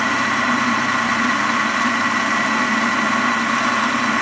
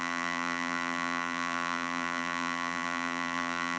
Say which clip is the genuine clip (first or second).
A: first